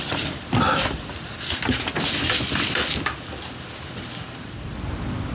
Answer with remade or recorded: recorded